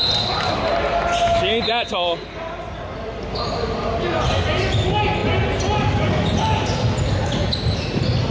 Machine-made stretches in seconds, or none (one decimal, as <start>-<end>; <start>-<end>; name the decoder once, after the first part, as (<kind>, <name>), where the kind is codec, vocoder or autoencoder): none